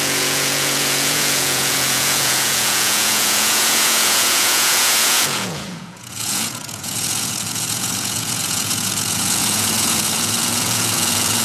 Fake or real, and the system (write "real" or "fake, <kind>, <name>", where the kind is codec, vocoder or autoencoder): fake, vocoder, Vocos